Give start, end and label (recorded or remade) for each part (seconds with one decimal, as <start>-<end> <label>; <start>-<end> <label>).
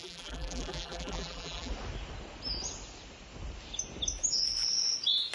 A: 0.0-1.7 remade; 1.7-5.3 recorded